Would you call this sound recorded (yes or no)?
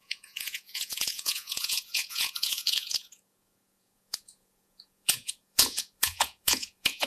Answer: no